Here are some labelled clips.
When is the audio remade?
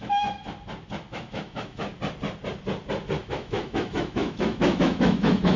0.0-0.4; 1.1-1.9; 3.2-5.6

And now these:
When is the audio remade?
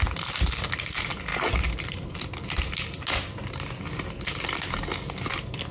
none